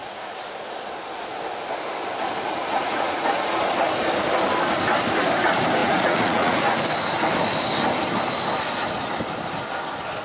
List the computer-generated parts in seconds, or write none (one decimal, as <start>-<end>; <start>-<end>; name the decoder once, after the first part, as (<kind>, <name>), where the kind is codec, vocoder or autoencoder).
0.0-0.5 (vocoder, Vocos); 2.7-3.6; 5.8-6.8